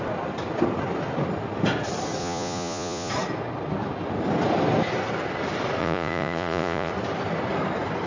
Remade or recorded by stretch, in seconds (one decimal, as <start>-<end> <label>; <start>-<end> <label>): 0.0-2.2 recorded; 2.2-3.1 remade; 3.1-5.8 recorded; 5.8-6.9 remade; 6.9-8.1 recorded